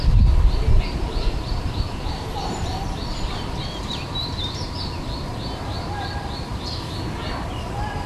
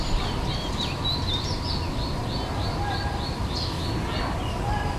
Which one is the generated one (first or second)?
first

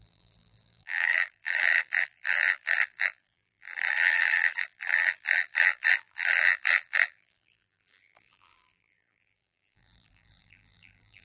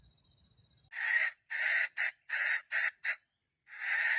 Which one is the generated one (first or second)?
first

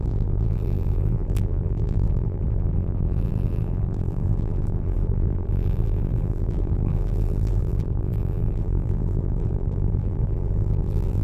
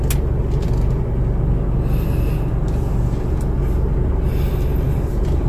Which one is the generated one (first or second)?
first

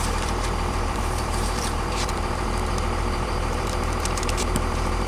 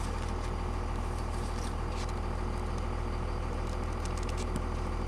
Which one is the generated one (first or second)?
first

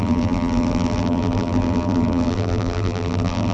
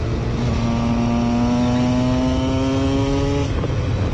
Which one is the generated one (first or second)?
first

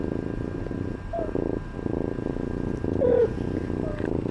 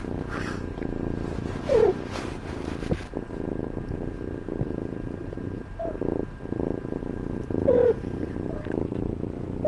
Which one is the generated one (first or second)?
second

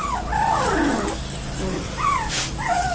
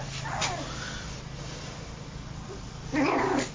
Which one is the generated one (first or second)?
second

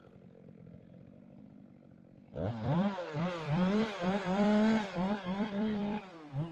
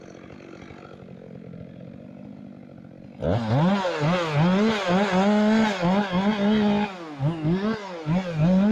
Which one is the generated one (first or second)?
first